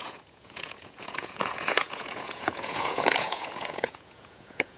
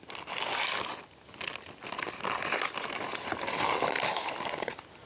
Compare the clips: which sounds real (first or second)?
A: second